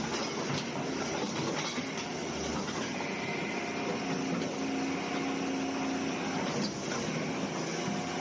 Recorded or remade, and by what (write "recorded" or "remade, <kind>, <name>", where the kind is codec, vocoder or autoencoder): recorded